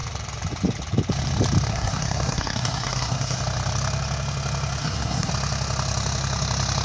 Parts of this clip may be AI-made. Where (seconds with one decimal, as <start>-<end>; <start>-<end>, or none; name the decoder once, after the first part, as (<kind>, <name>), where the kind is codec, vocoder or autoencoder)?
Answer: 1.7-3.4 (codec, SNAC); 4.8-5.3